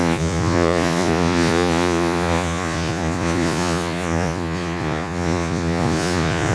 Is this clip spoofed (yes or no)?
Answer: yes